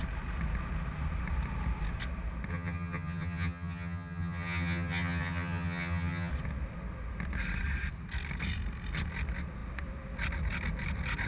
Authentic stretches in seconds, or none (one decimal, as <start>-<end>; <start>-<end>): 0.0-2.5; 6.3-11.3